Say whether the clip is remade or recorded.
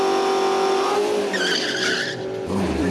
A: recorded